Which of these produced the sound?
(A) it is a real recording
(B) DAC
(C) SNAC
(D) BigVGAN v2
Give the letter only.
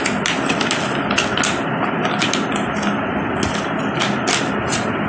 A